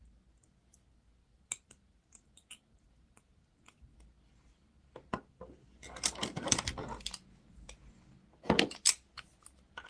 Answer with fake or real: real